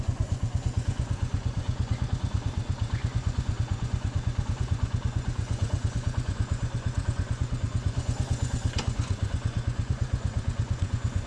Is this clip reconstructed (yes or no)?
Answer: yes